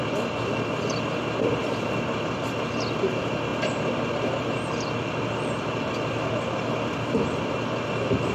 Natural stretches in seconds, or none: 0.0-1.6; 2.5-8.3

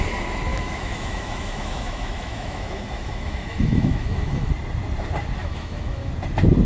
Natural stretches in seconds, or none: 0.0-0.5; 4.5-5.4; 6.1-6.7